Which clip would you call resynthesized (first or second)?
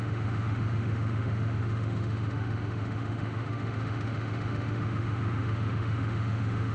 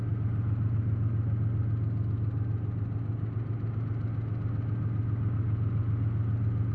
first